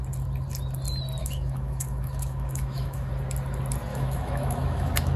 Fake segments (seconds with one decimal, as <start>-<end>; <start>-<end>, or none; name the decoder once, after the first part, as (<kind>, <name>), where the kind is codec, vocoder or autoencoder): 1.2-3.1 (autoencoder, DAC-VAE); 3.9-5.2